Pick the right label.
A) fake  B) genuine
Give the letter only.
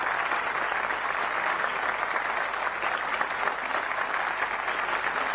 B